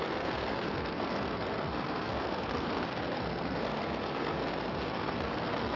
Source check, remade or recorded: remade